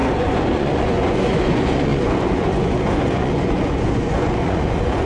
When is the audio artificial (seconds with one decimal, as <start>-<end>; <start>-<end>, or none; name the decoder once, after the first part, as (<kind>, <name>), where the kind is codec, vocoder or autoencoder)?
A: 0.0-5.1 (vocoder, Vocos)